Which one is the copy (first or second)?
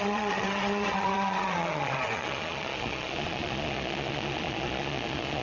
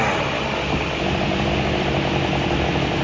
first